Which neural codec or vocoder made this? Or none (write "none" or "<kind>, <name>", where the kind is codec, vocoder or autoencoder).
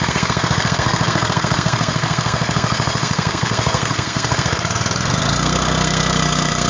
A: codec, SNAC